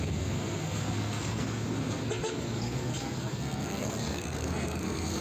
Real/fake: fake